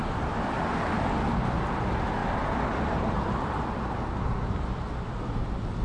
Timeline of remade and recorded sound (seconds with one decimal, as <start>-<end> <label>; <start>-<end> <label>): 0.0-5.8 recorded